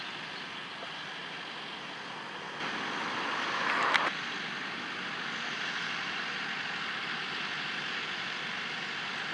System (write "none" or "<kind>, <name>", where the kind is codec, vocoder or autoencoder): none